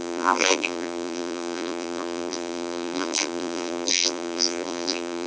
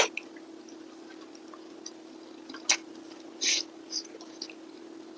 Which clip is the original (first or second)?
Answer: second